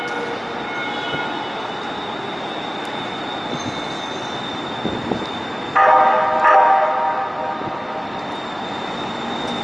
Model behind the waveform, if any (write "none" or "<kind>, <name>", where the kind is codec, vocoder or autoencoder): none